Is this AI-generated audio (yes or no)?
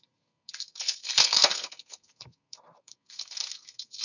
yes